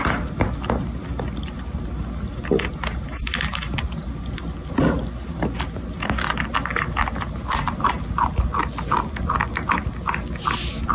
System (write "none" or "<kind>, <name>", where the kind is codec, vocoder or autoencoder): none